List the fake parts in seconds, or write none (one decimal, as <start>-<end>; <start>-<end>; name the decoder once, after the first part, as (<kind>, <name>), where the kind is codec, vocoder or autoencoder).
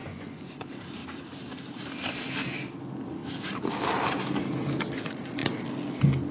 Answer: 0.0-0.6 (vocoder, Vocos)